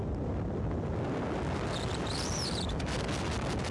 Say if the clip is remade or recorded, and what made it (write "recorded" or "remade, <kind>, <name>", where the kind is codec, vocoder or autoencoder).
recorded